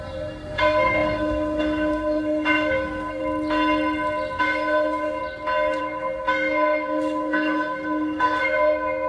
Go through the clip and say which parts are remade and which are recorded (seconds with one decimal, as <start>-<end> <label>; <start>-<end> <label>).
0.0-3.2 remade; 3.2-4.4 recorded; 4.4-5.2 remade; 5.2-5.8 recorded; 5.8-9.1 remade